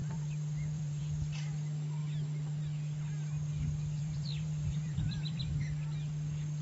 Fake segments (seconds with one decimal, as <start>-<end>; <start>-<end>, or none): 0.0-1.0; 4.0-5.6